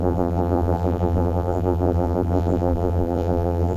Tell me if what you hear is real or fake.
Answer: fake